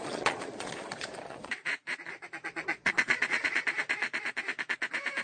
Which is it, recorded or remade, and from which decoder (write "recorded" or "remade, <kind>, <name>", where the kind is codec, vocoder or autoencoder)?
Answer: remade, vocoder, Vocos